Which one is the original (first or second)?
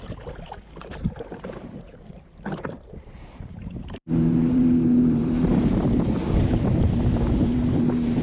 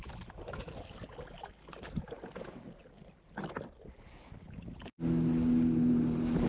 second